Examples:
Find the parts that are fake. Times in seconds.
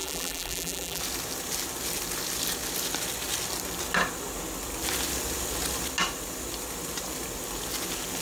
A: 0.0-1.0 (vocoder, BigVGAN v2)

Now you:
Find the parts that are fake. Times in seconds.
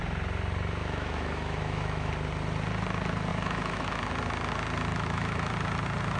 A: 0.8-2.1 (autoencoder, DAC-VAE); 3.3-4.1; 4.9-5.5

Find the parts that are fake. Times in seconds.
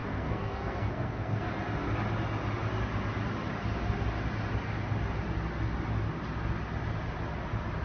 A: 0.0-1.5 (codec, SNAC)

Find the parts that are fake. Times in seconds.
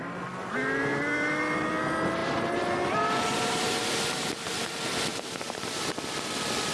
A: 2.2-4.5 (vocoder, BigVGAN v2); 5.1-5.8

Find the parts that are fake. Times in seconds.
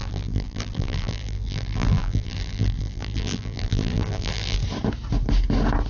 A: 0.0-4.6 (vocoder, BigVGAN v2)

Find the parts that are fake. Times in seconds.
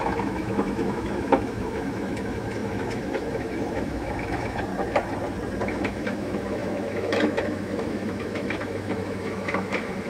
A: 0.0-4.7 (autoencoder, DAC-VAE); 5.7-10.1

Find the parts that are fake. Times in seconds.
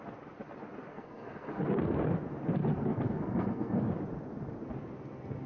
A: 0.9-2.1 (codec, SNAC); 2.6-3.8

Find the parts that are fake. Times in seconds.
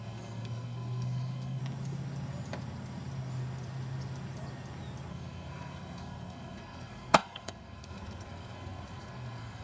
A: 0.0-1.6 (codec, SNAC); 5.1-9.6